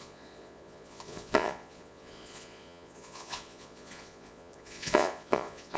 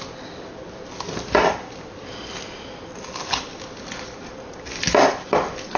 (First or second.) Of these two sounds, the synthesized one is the first